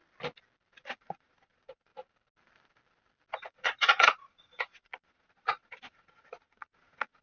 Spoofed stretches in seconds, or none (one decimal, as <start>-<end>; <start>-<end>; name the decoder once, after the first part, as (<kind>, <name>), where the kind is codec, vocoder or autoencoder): 1.0-1.9 (vocoder, Vocos); 3.4-7.2